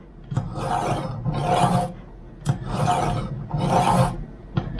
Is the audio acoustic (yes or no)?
yes